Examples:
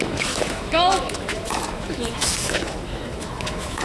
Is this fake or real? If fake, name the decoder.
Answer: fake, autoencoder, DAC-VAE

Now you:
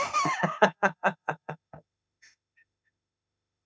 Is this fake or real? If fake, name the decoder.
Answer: fake, autoencoder, DAC-VAE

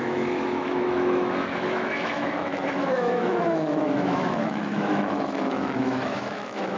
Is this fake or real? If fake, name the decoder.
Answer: fake, autoencoder, DAC-VAE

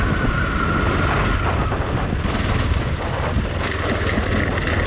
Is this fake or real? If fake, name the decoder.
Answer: real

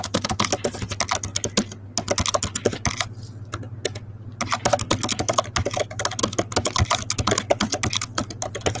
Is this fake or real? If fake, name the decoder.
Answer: real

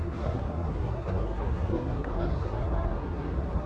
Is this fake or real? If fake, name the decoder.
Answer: fake, codec, SNAC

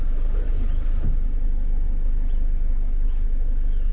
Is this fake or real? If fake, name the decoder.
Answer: fake, vocoder, BigVGAN v2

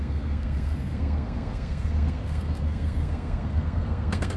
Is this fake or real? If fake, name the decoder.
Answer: fake, codec, SNAC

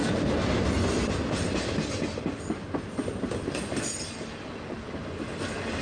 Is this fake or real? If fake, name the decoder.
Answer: real